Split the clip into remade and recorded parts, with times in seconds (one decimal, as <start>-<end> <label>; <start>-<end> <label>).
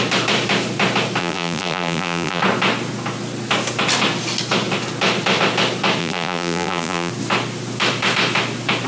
0.0-1.2 recorded; 1.2-2.4 remade; 2.4-6.0 recorded; 6.0-7.1 remade; 7.1-8.9 recorded